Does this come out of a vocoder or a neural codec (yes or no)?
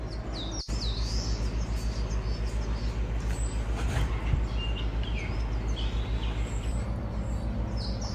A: no